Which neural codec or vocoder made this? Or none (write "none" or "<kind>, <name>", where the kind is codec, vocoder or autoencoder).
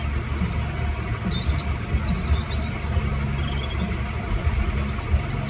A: none